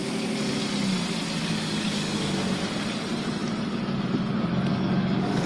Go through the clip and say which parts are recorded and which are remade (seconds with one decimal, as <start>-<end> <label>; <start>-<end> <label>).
0.0-0.6 remade; 0.6-1.4 recorded; 1.4-2.6 remade; 2.6-4.7 recorded; 4.7-5.5 remade